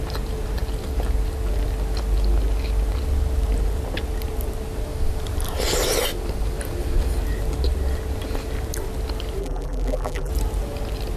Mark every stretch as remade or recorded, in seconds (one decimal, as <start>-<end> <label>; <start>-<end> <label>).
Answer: 0.0-9.4 recorded; 9.4-10.3 remade; 10.3-11.2 recorded